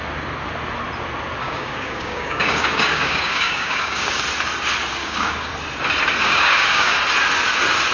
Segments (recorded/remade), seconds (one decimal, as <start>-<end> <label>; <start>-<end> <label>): 0.0-1.4 recorded; 1.4-4.2 remade; 4.2-5.0 recorded; 5.0-5.5 remade; 5.5-6.2 recorded; 6.2-7.0 remade; 7.0-7.9 recorded